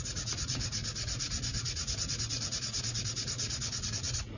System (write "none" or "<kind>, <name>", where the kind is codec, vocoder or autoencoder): vocoder, Vocos